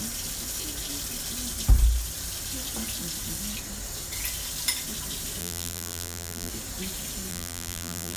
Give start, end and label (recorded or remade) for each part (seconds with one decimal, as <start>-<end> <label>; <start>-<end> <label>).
0.0-5.4 recorded; 5.4-6.5 remade; 6.5-7.3 recorded; 7.3-8.2 remade